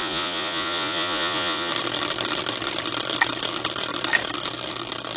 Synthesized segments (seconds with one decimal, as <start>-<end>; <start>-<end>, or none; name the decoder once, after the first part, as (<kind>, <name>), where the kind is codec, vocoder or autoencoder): 0.0-1.7 (vocoder, Vocos)